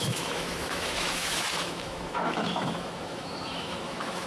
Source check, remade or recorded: remade